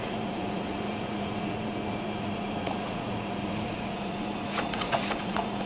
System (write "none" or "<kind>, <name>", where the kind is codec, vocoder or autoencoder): vocoder, Vocos